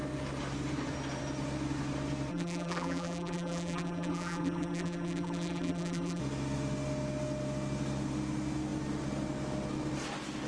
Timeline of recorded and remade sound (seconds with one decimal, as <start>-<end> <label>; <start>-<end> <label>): 0.0-2.3 recorded; 2.3-6.2 remade; 6.2-10.5 recorded